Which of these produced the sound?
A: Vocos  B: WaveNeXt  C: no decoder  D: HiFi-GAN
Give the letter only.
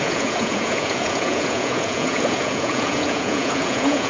A